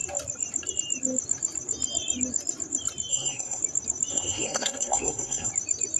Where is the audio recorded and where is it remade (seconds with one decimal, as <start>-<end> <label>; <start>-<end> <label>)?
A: 0.0-3.1 recorded; 3.1-3.6 remade; 3.6-4.1 recorded; 4.1-5.5 remade; 5.5-6.0 recorded